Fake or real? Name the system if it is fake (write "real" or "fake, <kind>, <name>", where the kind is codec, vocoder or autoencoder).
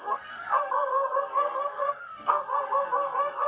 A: fake, codec, SNAC